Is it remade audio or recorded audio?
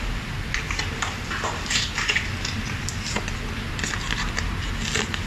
recorded